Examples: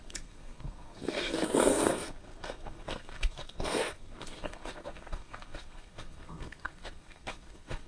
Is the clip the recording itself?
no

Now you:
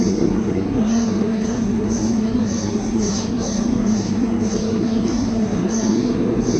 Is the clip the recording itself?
no